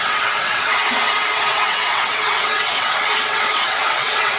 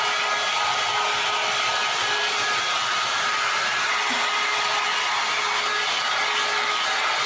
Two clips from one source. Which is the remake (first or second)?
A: first